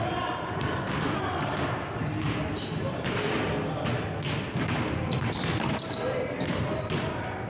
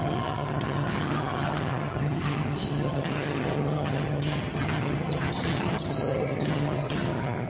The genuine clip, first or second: first